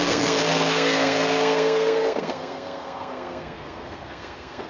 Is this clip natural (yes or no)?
no